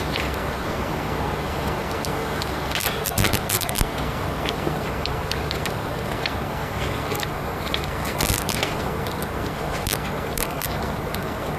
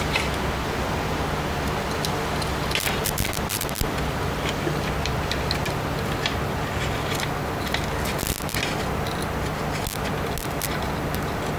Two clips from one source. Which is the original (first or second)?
second